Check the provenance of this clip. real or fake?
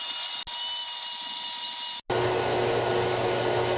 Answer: real